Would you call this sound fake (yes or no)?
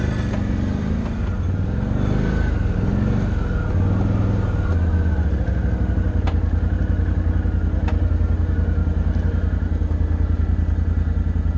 no